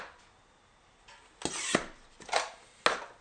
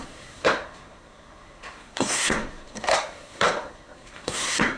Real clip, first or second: first